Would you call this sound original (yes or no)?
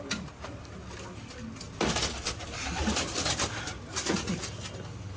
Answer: yes